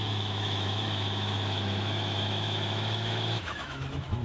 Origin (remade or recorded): remade